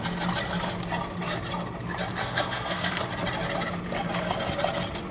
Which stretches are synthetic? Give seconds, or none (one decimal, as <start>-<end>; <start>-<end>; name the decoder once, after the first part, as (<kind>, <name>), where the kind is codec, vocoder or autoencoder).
2.2-3.0 (codec, SNAC)